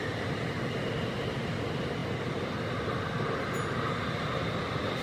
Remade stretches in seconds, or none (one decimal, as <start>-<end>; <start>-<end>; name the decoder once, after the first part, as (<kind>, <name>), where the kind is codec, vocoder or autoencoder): none